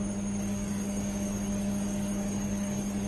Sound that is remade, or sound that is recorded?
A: remade